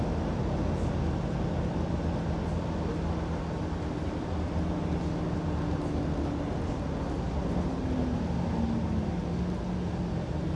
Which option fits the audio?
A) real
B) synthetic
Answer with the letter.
A